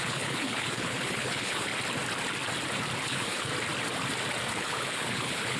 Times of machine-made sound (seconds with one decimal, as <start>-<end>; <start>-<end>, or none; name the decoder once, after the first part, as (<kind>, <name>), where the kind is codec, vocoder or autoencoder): 0.0-1.7 (codec, HILCodec); 3.0-3.5; 4.5-5.6